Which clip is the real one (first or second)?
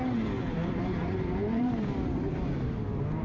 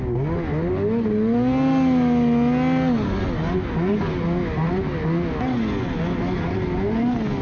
second